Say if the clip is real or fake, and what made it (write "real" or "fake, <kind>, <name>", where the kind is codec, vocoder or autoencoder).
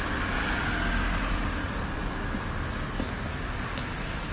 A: real